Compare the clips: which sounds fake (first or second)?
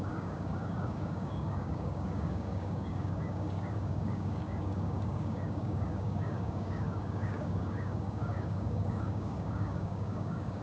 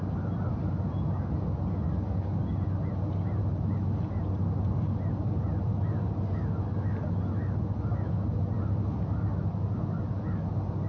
first